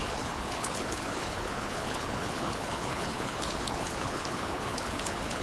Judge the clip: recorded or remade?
remade